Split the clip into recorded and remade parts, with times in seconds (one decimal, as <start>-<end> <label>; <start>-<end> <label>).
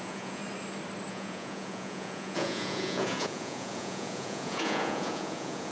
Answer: 0.0-0.4 remade; 0.4-1.1 recorded; 1.1-5.7 remade